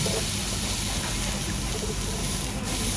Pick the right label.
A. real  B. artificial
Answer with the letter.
A